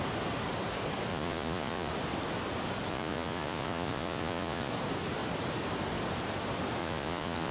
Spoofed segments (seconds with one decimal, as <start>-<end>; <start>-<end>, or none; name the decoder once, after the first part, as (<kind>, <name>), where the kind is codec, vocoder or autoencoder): 1.1-1.9 (vocoder, Vocos); 2.9-4.7; 6.8-7.5